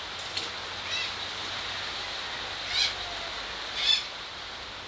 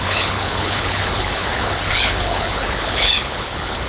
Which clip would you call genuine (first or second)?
first